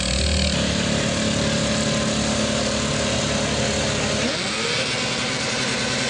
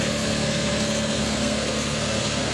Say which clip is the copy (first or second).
second